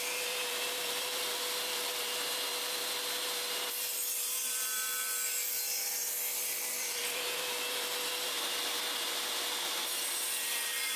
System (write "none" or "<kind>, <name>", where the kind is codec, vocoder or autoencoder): vocoder, BigVGAN v2